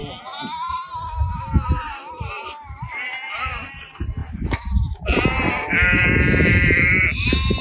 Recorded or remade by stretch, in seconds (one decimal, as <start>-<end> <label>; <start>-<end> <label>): 0.0-0.7 recorded; 0.7-1.5 remade; 1.5-2.0 recorded; 2.0-7.6 remade